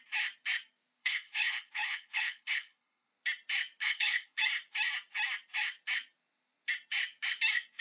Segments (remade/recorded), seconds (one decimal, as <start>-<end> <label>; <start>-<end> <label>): 0.0-1.0 recorded; 1.0-3.1 remade; 3.1-3.8 recorded; 3.8-4.4 remade; 4.4-7.8 recorded